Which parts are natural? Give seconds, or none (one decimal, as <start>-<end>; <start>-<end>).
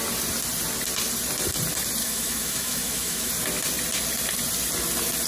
0.0-2.0; 3.3-5.3